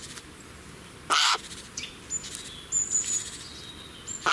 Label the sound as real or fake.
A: real